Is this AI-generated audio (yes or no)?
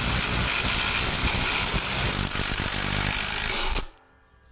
no